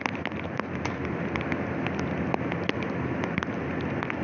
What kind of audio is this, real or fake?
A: real